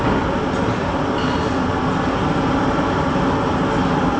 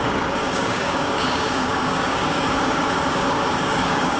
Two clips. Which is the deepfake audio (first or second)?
second